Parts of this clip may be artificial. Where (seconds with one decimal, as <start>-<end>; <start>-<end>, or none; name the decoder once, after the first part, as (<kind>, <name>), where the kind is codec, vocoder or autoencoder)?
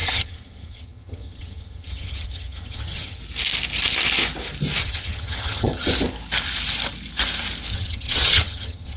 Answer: 0.0-3.2 (vocoder, HiFi-GAN); 4.8-5.9; 7.7-9.0